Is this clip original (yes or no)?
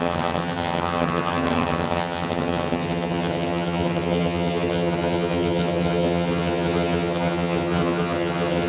no